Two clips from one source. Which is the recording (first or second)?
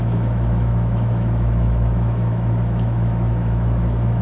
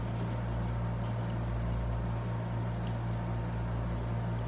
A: second